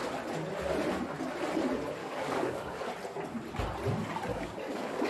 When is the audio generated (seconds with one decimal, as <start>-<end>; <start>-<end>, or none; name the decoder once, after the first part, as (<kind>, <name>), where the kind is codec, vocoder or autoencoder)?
2.0-2.9 (codec, DAC); 4.3-5.1